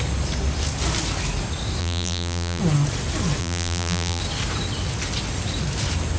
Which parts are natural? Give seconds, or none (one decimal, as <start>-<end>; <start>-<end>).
0.0-1.8; 2.6-3.4; 4.2-6.2